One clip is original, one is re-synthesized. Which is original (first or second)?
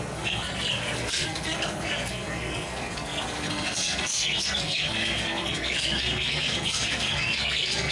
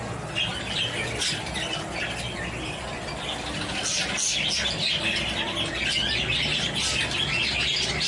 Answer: second